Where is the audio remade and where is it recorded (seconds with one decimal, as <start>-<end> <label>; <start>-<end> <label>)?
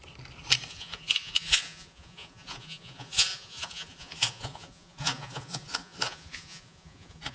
0.0-0.7 recorded; 0.7-7.3 remade